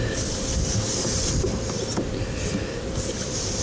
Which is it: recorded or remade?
recorded